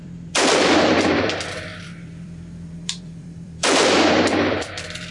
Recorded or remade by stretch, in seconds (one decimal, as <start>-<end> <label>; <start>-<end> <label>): 0.0-5.1 remade